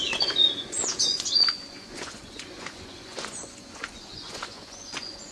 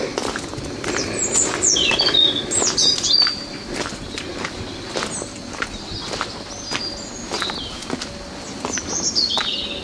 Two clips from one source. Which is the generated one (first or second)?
first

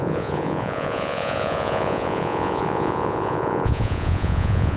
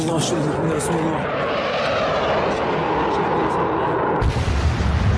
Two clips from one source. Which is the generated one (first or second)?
first